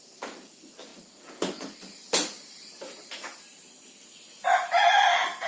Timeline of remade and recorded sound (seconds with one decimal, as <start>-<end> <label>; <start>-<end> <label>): 0.0-5.5 recorded